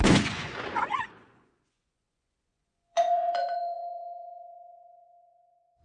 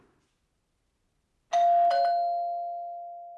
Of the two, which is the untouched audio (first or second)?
second